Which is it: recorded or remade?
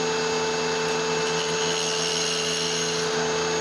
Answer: recorded